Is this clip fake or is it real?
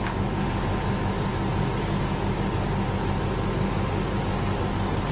real